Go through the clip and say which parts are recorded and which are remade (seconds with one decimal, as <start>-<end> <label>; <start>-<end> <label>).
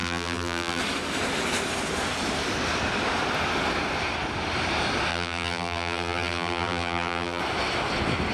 0.0-0.8 remade; 0.8-5.1 recorded; 5.1-7.4 remade; 7.4-8.3 recorded